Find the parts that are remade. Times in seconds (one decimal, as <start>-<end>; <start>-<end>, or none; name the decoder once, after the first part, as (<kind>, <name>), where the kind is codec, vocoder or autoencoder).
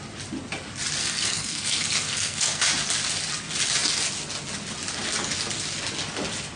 1.0-2.6 (codec, SNAC)